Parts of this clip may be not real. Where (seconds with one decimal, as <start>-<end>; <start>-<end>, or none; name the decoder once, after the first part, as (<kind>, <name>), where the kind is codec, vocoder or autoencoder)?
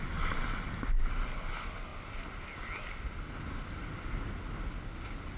none